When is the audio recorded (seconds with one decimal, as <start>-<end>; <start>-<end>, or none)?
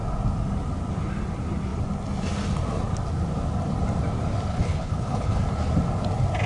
0.0-4.5; 5.4-6.5